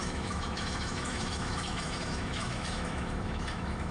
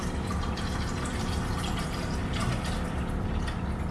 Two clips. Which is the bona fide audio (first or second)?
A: second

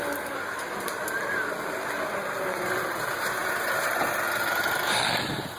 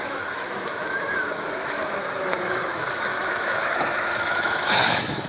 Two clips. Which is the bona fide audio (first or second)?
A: first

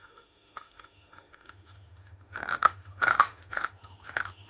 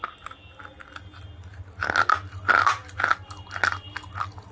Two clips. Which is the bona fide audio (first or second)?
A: second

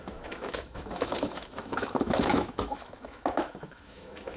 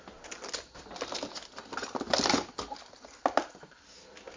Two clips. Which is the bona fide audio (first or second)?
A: second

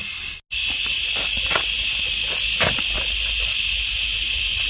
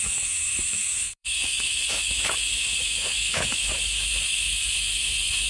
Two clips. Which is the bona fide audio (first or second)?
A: first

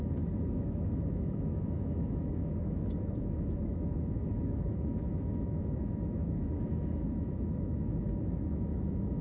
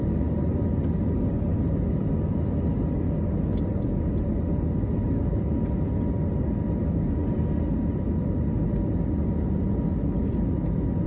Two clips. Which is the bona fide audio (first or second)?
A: second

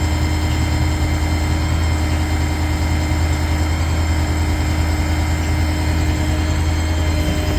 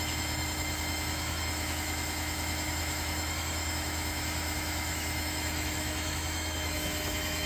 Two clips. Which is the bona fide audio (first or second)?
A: first